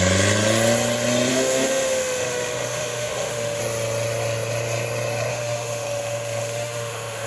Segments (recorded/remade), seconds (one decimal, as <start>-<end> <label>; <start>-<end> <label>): 0.0-1.3 recorded; 1.3-3.6 remade; 3.6-5.3 recorded; 5.3-7.3 remade